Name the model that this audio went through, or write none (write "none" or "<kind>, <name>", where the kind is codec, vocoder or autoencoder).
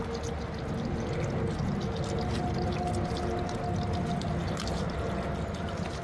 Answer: none